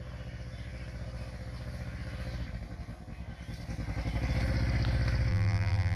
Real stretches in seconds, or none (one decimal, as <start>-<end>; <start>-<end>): 0.0-5.3